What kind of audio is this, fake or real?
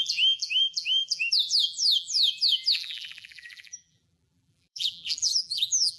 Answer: fake